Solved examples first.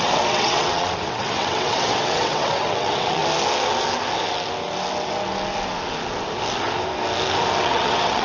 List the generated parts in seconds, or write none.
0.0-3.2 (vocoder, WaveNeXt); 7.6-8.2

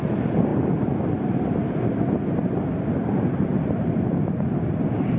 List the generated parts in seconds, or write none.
none

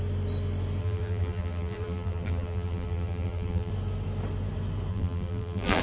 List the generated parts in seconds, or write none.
0.8-3.7 (vocoder, BigVGAN v2); 4.9-5.8

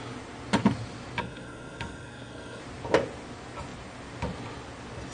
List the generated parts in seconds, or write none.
1.2-2.6 (codec, SNAC)

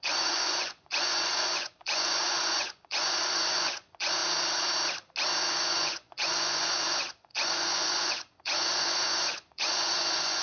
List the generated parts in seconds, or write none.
0.0-4.2 (vocoder, Vocos); 5.5-10.4

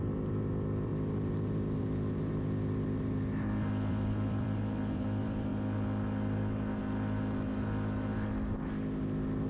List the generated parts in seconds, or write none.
0.0-0.9 (vocoder, BigVGAN v2); 3.9-5.5

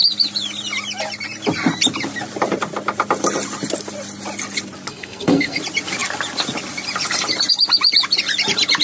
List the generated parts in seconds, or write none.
4.9-5.6 (codec, SNAC)

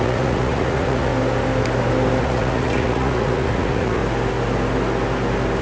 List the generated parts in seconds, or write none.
0.0-1.1 (vocoder, Vocos); 2.2-4.0